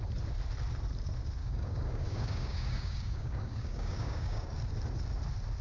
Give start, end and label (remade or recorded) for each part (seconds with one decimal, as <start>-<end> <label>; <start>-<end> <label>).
0.0-1.4 recorded; 1.4-4.6 remade; 4.6-5.6 recorded